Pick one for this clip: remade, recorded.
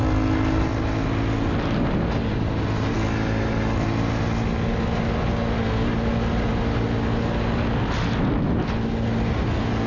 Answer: recorded